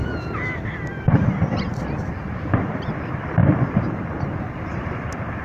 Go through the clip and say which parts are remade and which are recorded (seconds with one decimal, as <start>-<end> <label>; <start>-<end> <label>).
0.0-5.4 recorded